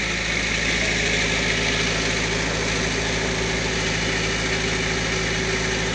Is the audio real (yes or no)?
yes